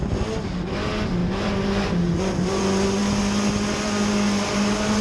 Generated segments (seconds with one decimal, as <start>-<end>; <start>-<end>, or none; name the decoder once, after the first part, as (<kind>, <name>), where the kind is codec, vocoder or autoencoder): 1.2-2.6 (vocoder, BigVGAN v2)